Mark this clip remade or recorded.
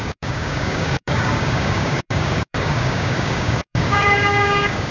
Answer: remade